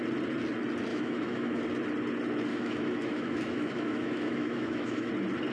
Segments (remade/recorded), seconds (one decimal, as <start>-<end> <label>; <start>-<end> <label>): 0.0-0.9 recorded; 0.9-1.6 remade; 1.6-2.5 recorded; 2.5-5.1 remade; 5.1-5.5 recorded

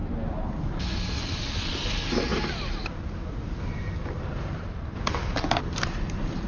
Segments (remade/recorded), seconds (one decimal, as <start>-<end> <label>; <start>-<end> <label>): 0.0-2.3 recorded; 2.3-6.5 remade

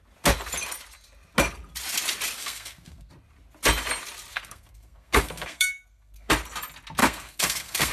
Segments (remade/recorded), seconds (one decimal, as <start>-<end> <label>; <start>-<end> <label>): 0.0-2.4 recorded; 2.4-3.1 remade; 3.1-4.3 recorded; 4.3-6.3 remade; 6.3-7.0 recorded; 7.0-7.9 remade

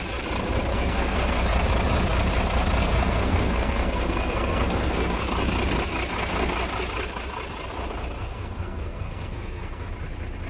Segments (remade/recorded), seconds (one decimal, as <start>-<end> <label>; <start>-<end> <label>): 0.0-0.7 recorded; 0.7-1.4 remade; 1.4-2.8 recorded; 2.8-5.2 remade; 5.2-8.2 recorded; 8.2-9.9 remade; 9.9-10.5 recorded

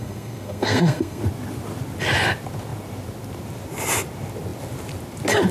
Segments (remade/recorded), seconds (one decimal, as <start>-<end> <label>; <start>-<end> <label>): 0.0-1.2 remade; 1.2-5.5 recorded

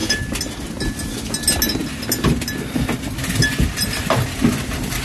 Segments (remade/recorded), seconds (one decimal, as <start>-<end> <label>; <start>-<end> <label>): 0.0-5.0 recorded